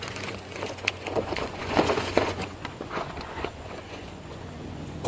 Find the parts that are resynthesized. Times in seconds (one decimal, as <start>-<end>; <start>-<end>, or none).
0.0-5.1